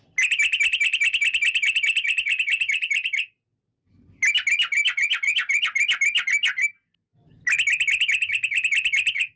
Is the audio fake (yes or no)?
no